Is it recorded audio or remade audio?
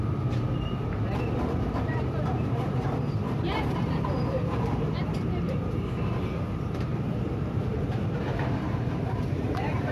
remade